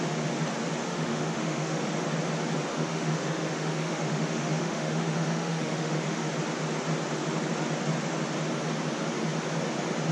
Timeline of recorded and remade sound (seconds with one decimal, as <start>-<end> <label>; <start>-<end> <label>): 0.0-0.8 recorded; 0.8-1.8 remade; 1.8-2.7 recorded; 2.7-6.3 remade; 6.3-10.1 recorded